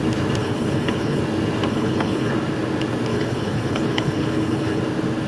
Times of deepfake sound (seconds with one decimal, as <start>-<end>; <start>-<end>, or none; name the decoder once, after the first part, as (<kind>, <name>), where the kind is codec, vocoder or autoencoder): 0.4-1.2 (codec, HILCodec); 1.7-2.3; 3.1-4.8